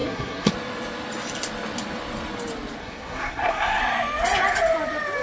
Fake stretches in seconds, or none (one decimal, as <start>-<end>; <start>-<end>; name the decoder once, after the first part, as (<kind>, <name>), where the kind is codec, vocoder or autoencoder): 0.0-0.5 (codec, SNAC); 2.8-3.8